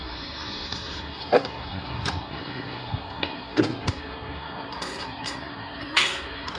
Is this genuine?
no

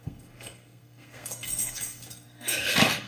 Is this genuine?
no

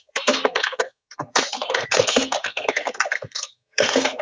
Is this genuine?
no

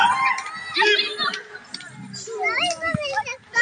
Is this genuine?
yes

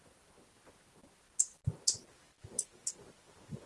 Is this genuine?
yes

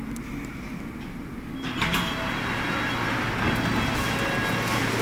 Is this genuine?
yes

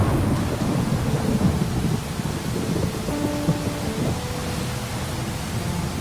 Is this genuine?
yes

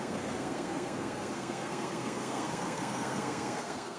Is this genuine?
no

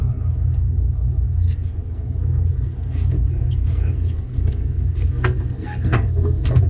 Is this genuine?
no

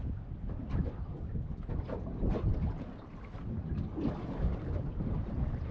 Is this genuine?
yes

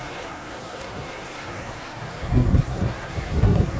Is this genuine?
no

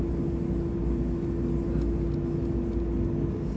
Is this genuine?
yes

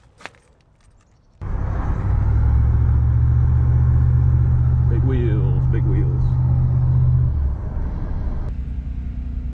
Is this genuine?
yes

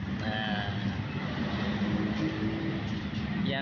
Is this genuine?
yes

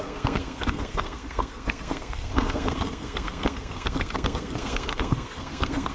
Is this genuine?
no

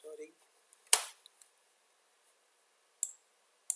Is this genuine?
yes